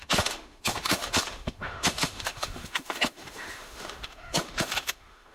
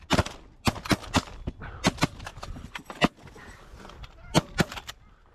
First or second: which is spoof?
first